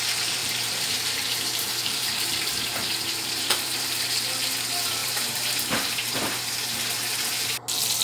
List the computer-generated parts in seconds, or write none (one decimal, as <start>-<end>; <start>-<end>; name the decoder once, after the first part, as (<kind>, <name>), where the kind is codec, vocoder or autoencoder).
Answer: 0.4-4.1 (vocoder, BigVGAN v2); 5.0-6.1